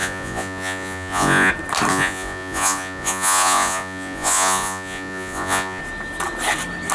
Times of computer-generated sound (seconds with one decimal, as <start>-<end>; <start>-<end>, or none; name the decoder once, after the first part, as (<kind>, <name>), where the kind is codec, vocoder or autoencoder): 0.0-1.5 (vocoder, Vocos); 1.9-5.8